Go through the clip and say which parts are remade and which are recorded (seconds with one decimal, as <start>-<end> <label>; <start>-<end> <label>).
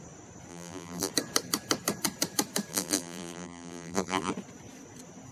0.0-0.5 recorded; 0.5-1.1 remade; 1.1-2.7 recorded; 2.7-4.3 remade; 4.3-5.3 recorded